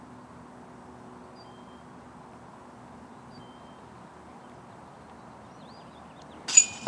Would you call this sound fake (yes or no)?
no